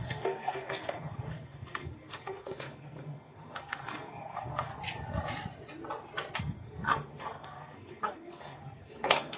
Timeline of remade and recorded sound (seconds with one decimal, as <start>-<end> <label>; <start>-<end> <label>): 0.0-4.7 remade; 4.7-6.4 recorded; 6.4-9.4 remade